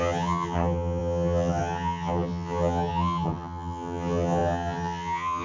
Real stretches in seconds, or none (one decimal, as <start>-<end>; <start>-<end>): none

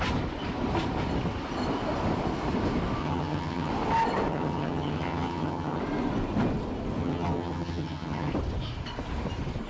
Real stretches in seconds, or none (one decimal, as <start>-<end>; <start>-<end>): 0.0-3.0; 3.7-4.3; 5.8-7.0; 8.3-9.7

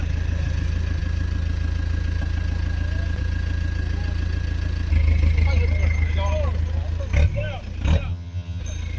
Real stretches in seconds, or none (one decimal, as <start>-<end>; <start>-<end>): 0.0-8.1; 8.6-9.0

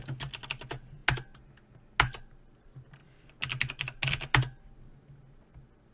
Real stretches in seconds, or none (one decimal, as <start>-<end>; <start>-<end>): 0.0-5.9

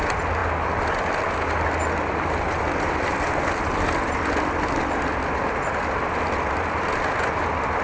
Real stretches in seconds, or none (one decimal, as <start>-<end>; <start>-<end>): 0.0-7.8

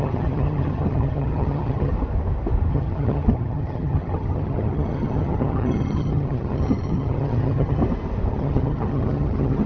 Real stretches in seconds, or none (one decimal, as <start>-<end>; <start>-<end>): 1.9-2.7; 7.8-8.3